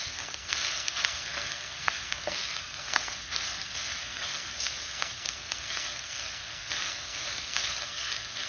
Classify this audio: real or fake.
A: fake